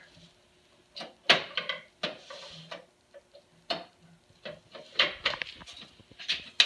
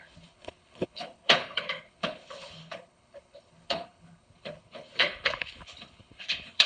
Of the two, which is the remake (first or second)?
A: second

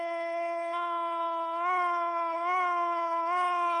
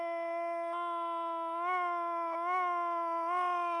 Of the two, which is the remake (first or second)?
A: first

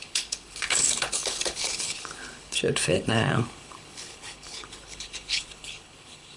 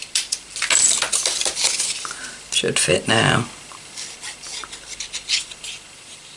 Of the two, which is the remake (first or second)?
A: first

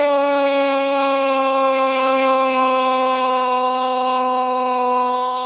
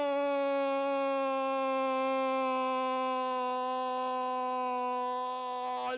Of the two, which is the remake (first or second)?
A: first